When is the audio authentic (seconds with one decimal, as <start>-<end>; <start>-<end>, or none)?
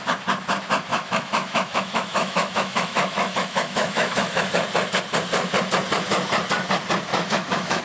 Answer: 0.0-0.9; 4.5-7.1